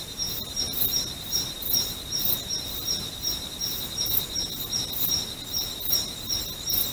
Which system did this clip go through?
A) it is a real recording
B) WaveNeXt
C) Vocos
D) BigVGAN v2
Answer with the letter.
A